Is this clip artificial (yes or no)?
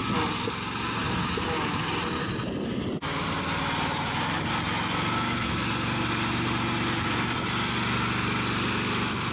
no